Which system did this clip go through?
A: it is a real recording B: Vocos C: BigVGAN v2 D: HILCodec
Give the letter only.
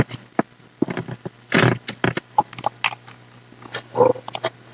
A